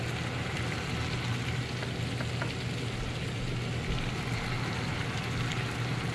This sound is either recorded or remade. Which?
recorded